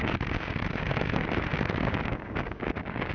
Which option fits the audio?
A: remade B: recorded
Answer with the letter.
A